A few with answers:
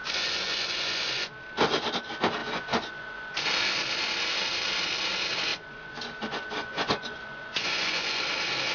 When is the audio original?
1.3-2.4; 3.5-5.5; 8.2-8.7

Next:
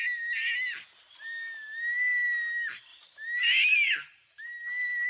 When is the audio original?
0.0-5.1

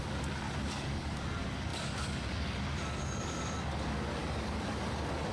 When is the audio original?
none